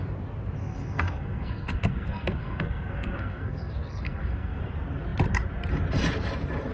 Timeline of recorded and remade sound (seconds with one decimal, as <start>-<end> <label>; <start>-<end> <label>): 0.0-0.6 recorded; 0.6-4.6 remade; 4.6-6.7 recorded